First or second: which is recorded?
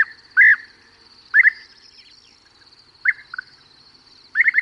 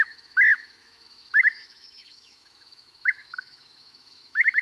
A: first